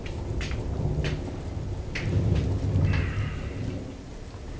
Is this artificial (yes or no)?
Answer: no